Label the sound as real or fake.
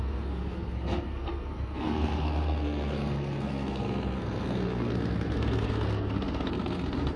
fake